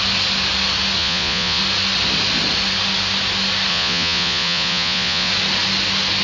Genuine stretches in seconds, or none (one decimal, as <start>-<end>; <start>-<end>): 0.0-1.0; 1.6-3.7; 5.3-6.2